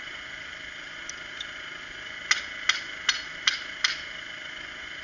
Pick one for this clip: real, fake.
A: real